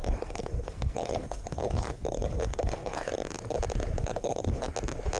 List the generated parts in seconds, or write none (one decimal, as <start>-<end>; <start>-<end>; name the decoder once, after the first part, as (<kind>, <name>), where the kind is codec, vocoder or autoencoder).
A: 0.0-3.1 (codec, SNAC); 4.0-4.7